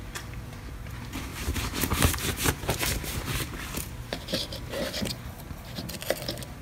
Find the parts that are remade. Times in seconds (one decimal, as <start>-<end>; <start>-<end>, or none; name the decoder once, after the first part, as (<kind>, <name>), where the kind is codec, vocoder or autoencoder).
1.3-5.1 (vocoder, BigVGAN v2)